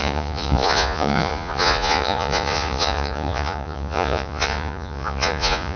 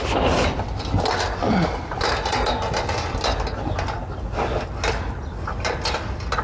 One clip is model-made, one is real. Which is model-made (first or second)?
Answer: first